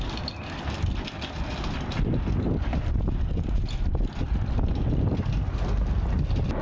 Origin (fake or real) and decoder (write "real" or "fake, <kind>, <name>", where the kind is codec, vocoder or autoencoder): real